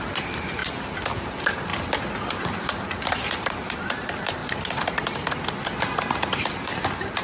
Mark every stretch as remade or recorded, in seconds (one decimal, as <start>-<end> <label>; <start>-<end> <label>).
0.0-0.6 remade; 0.6-1.2 recorded; 1.2-1.7 remade; 1.7-2.3 recorded; 2.3-4.4 remade; 4.4-5.8 recorded; 5.8-7.2 remade